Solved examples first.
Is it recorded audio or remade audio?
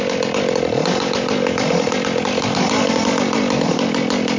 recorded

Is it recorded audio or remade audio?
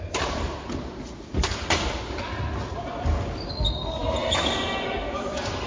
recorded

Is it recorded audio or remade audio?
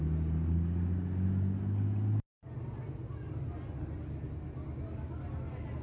recorded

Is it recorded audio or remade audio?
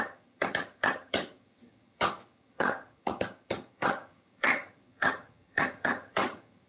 remade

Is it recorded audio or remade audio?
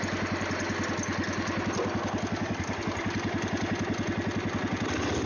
recorded